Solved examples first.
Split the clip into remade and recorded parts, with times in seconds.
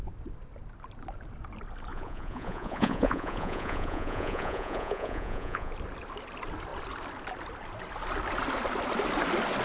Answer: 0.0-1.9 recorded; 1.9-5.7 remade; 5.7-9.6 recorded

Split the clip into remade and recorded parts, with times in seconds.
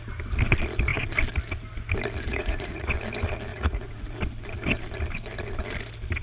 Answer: 0.0-2.3 recorded; 2.3-2.9 remade; 2.9-3.5 recorded; 3.5-4.2 remade; 4.2-6.2 recorded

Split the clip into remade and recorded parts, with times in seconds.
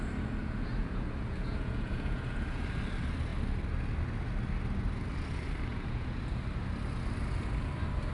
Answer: 0.0-0.4 recorded; 0.4-2.6 remade; 2.6-5.7 recorded; 5.7-6.4 remade; 6.4-8.1 recorded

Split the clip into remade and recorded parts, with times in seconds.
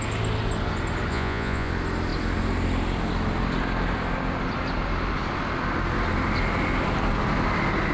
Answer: 0.0-1.1 recorded; 1.1-1.7 remade; 1.7-7.9 recorded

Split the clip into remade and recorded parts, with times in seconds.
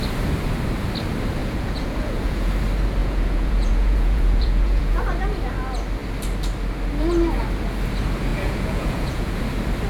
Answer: 0.0-1.4 recorded; 1.4-2.5 remade; 2.5-3.0 recorded; 3.0-5.0 remade; 5.0-8.3 recorded; 8.3-9.4 remade; 9.4-9.9 recorded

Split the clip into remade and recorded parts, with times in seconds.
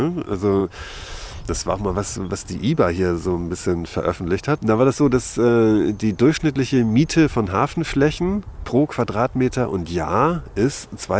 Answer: 0.0-0.6 recorded; 0.6-1.3 remade; 1.3-11.2 recorded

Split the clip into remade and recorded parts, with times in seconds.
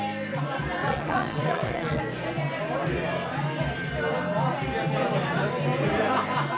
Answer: 0.0-0.8 recorded; 0.8-2.0 remade; 2.0-6.6 recorded